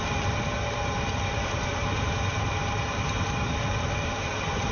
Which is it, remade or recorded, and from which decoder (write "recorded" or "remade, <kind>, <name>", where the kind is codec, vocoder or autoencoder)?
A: remade, vocoder, BigVGAN v2